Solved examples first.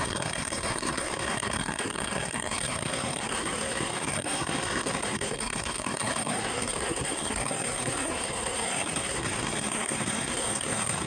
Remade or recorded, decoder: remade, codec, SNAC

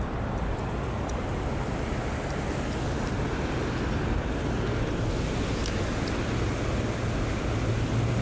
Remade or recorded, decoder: recorded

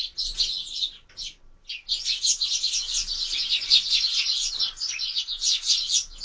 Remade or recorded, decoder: recorded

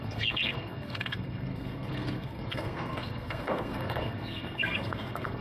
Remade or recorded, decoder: remade, codec, SNAC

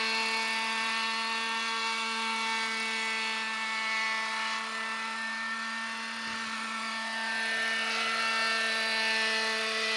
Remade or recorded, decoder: recorded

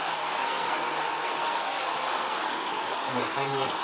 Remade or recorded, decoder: remade, codec, SNAC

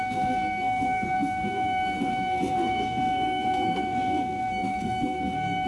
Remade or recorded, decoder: remade, codec, SNAC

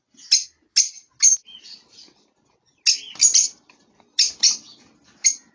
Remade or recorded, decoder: recorded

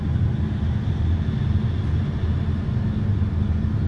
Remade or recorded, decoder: recorded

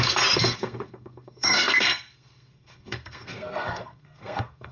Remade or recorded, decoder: remade, codec, SNAC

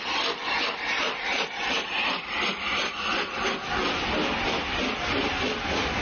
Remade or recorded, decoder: recorded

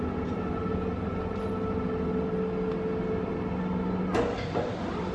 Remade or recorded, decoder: recorded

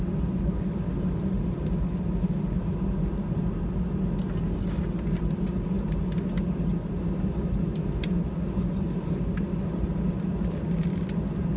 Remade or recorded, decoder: recorded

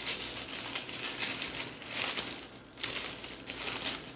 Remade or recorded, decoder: recorded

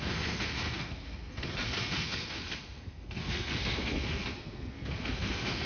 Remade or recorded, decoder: remade, codec, SNAC